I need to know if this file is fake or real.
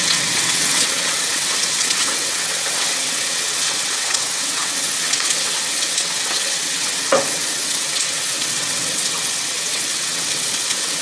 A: fake